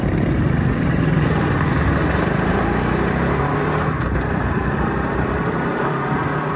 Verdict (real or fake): fake